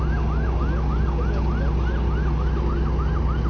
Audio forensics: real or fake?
real